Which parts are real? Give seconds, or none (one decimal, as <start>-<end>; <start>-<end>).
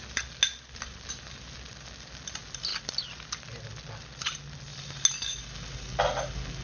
0.0-6.6